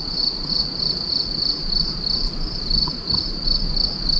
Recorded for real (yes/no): yes